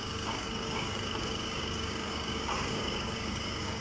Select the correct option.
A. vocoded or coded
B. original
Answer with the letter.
A